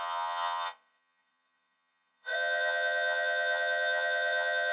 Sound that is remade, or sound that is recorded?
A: remade